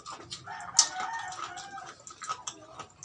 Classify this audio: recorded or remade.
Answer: recorded